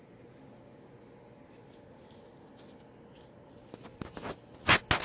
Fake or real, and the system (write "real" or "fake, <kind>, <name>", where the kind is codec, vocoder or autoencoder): real